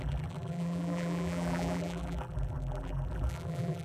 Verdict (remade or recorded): remade